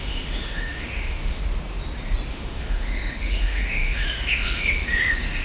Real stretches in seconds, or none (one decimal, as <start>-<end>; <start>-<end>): 1.4-2.3